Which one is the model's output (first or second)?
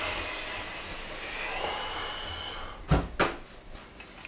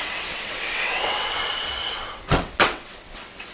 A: second